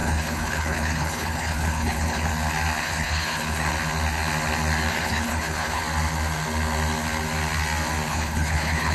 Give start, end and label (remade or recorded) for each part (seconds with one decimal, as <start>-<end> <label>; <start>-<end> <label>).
0.0-2.3 remade; 2.3-2.8 recorded; 2.8-3.7 remade; 3.7-4.9 recorded; 4.9-5.8 remade; 5.8-8.1 recorded; 8.1-8.9 remade